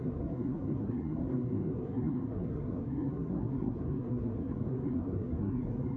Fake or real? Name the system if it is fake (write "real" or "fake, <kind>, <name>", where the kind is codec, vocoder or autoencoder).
fake, codec, SNAC